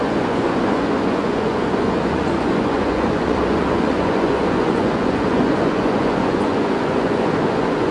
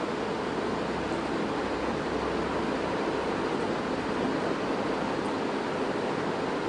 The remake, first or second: first